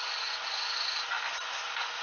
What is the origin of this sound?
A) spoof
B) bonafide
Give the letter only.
B